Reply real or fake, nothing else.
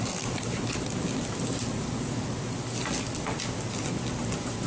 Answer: real